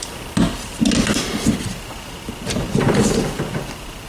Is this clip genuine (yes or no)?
yes